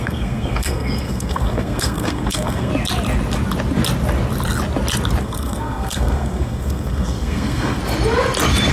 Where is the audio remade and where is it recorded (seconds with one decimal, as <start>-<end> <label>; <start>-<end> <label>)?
0.0-2.7 remade; 2.7-5.2 recorded; 5.2-7.8 remade; 7.8-8.7 recorded